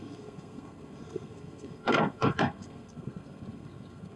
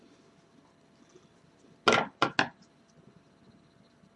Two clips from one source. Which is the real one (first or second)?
second